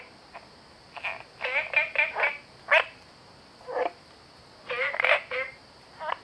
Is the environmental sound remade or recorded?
recorded